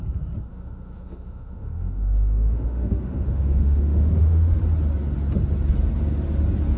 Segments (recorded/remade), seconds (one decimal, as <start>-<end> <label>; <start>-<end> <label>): 0.0-0.5 recorded; 0.5-4.6 remade; 4.6-6.8 recorded